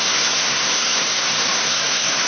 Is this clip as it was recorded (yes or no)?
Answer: no